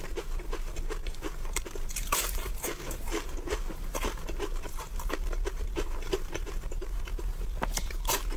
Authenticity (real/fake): fake